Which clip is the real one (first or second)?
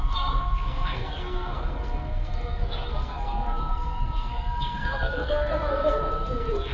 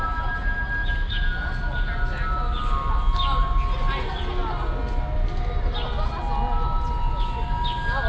second